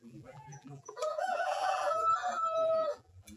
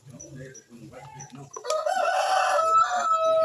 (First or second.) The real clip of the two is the second